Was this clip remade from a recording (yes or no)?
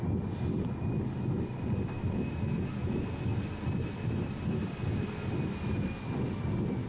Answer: no